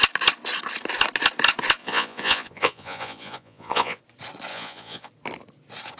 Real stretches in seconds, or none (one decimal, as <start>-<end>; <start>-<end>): 0.0-1.8; 4.0-4.5; 5.1-6.0